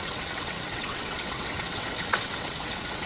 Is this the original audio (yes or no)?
no